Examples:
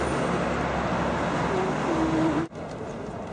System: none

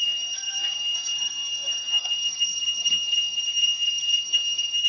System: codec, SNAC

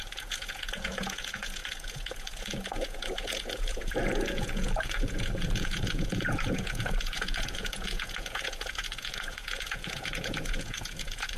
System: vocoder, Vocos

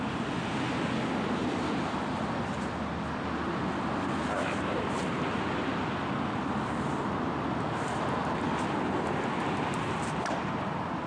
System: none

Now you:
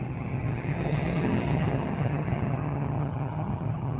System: vocoder, HiFi-GAN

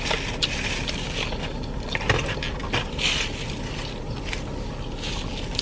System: none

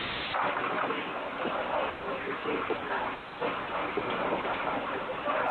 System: none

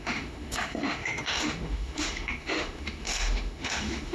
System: autoencoder, DAC-VAE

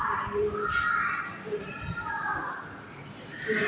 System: none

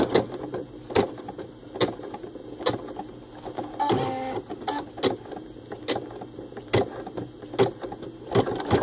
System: none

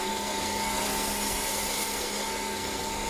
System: codec, SNAC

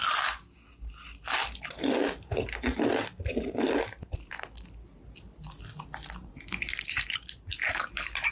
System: none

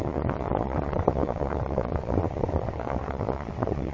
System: vocoder, WaveNeXt